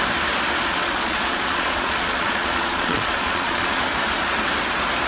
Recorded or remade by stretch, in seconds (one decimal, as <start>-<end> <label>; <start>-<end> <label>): 0.0-0.7 recorded; 0.7-3.8 remade; 3.8-5.1 recorded